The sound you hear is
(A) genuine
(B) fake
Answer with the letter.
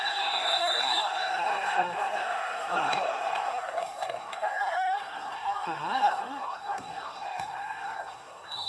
B